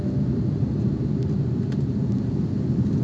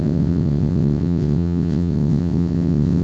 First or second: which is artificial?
second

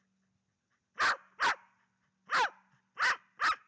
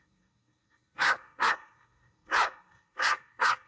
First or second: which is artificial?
second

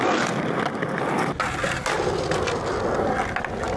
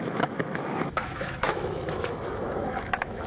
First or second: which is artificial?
second